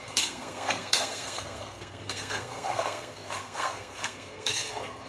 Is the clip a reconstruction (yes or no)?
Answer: yes